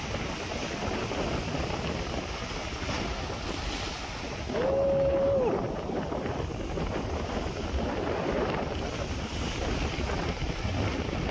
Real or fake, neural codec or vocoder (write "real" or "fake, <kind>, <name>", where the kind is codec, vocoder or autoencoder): real